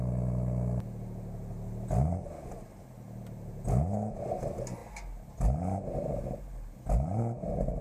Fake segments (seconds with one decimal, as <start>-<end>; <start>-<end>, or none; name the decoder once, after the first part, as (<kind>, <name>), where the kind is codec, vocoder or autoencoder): none